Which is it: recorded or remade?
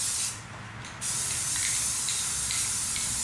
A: recorded